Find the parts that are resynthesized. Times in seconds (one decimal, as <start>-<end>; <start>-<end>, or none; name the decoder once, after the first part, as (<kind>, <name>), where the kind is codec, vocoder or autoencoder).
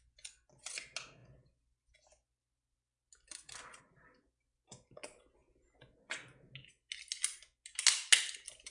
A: none